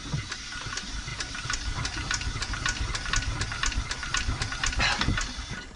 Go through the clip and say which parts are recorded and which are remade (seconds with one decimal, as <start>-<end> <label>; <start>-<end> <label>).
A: 0.0-5.8 recorded